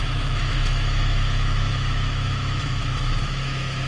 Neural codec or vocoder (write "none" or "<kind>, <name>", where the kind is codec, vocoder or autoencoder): autoencoder, DAC-VAE